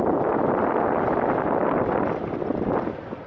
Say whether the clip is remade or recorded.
recorded